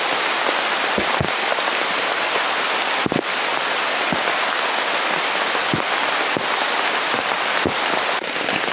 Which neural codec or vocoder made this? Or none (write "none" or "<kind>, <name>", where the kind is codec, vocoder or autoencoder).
none